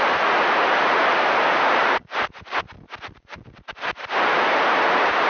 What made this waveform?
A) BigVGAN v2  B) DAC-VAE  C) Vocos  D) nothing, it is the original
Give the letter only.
A